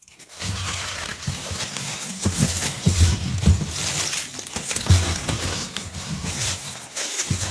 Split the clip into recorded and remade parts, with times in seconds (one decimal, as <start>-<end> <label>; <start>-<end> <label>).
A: 0.0-3.3 remade; 3.3-4.5 recorded; 4.5-7.5 remade